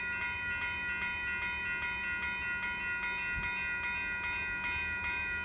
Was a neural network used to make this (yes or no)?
no